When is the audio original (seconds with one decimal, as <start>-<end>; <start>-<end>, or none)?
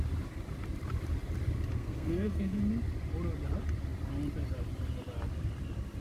0.0-1.8; 2.6-6.0